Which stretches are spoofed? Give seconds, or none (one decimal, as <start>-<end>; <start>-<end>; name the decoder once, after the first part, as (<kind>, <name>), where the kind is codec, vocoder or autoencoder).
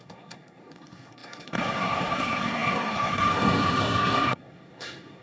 0.0-5.2 (codec, SNAC)